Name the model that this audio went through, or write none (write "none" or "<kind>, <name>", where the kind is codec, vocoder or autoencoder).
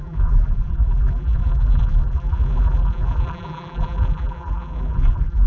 vocoder, BigVGAN v2